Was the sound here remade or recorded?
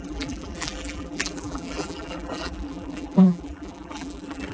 remade